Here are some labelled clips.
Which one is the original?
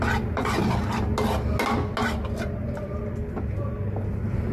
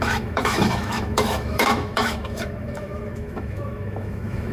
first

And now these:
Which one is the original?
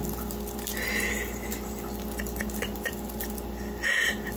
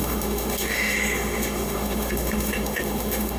first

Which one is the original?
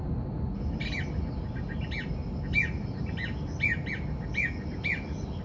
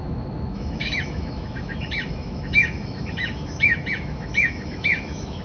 first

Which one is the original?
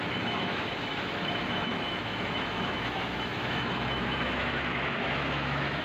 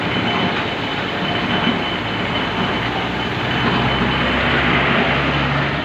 second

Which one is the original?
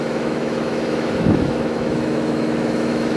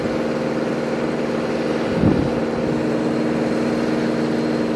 second